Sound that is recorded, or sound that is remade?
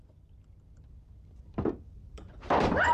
remade